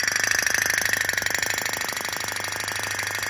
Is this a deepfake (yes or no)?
no